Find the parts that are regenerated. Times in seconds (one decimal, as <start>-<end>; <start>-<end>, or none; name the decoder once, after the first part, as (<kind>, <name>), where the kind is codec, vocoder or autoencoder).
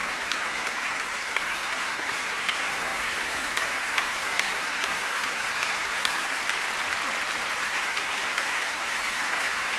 0.0-6.4 (codec, SNAC); 7.6-9.8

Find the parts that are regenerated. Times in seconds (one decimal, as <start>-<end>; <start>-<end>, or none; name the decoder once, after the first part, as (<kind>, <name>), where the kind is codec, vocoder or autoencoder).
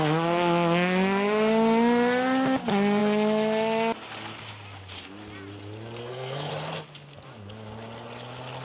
6.0-6.5 (codec, SNAC)